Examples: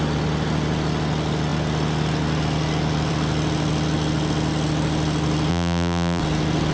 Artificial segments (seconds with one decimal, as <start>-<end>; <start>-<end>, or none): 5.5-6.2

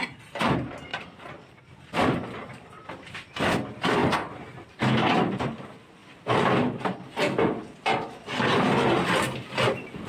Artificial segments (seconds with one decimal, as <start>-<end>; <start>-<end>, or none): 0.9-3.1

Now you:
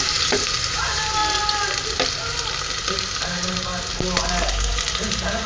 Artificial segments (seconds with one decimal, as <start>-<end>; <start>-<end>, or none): 0.0-1.2; 2.9-3.7; 4.5-5.5

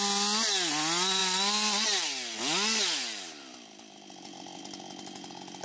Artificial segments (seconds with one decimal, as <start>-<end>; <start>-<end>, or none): 1.2-4.6

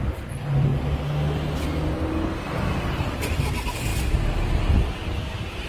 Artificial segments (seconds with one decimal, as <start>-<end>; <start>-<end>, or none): 0.0-0.7; 3.5-3.9

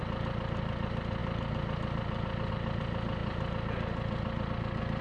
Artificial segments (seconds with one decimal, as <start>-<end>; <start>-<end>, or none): none